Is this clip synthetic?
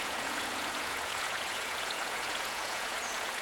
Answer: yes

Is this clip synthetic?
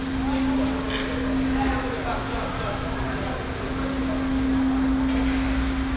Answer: no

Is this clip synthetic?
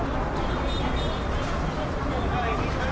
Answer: no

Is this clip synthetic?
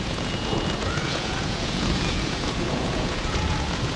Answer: yes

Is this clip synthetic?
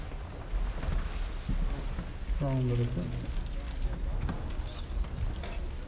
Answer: no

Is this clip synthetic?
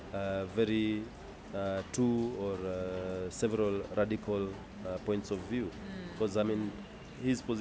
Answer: no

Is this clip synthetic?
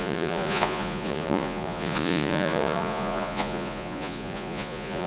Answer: yes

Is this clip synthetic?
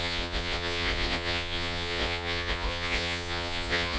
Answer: yes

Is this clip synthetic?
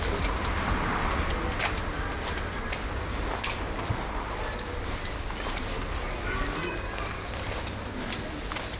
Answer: no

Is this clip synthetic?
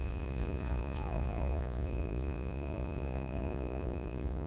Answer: yes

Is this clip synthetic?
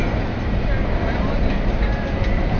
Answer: no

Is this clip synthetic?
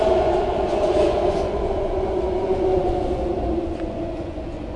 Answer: yes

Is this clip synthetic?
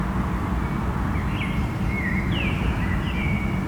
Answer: no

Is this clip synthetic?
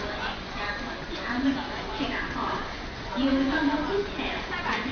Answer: yes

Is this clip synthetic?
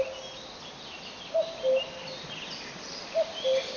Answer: no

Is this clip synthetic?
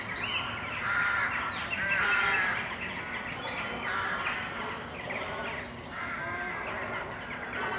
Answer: no